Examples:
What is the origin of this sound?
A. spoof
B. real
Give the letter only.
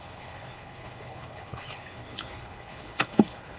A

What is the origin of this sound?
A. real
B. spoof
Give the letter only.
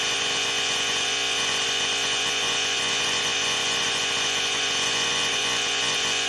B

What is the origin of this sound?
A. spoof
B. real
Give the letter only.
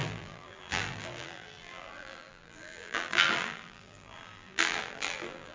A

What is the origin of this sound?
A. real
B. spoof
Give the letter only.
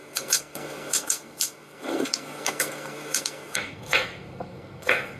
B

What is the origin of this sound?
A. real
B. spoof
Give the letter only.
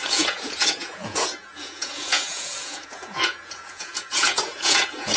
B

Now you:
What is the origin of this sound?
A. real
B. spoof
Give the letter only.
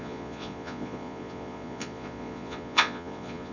B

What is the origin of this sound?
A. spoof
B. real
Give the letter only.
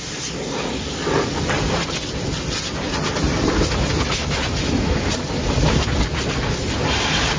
B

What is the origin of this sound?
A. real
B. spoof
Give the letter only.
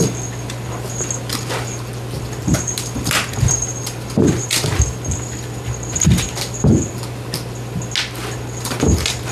A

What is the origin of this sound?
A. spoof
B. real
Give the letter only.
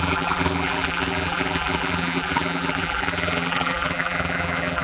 A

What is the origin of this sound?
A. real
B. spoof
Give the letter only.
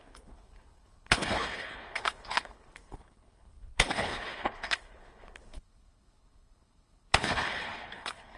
B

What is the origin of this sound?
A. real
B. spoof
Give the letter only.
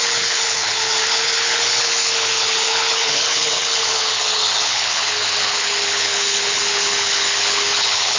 B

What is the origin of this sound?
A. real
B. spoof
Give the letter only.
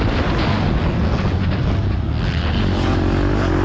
A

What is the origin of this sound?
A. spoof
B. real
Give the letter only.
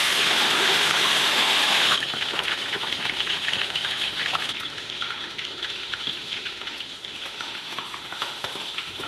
A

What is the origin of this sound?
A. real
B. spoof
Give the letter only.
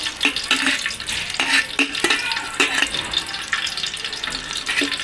A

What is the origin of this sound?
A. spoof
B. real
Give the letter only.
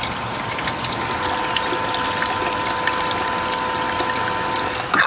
B